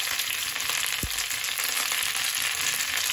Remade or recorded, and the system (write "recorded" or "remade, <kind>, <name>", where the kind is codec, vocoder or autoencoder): recorded